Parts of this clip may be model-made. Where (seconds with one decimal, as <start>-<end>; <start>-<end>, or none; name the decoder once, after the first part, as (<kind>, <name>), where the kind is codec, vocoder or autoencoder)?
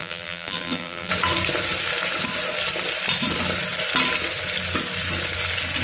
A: 0.0-1.1 (vocoder, BigVGAN v2)